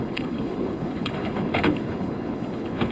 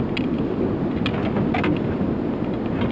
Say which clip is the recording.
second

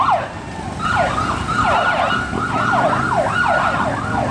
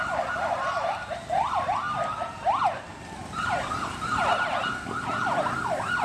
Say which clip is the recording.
first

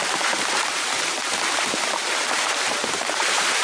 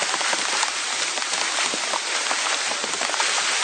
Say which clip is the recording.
second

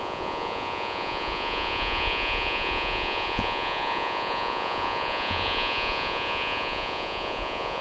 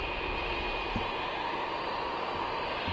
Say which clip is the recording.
second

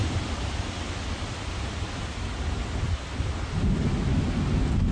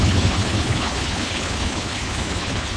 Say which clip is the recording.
first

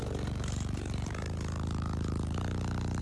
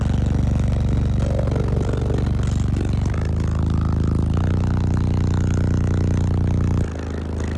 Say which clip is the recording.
second